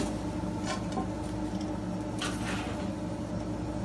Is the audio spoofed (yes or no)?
no